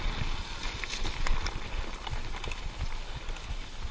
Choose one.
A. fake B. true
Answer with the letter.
B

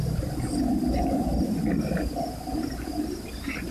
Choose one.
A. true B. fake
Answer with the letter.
A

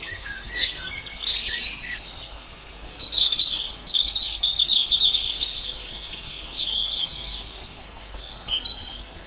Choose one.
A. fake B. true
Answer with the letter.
A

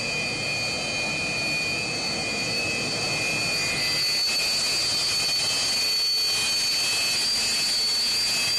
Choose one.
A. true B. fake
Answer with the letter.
A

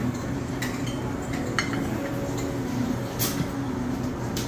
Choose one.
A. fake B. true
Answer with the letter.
B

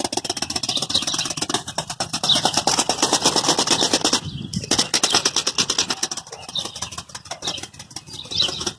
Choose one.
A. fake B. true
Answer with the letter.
B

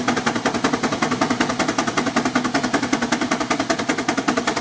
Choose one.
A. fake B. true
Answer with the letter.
B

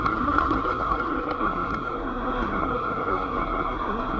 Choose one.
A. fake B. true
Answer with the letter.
A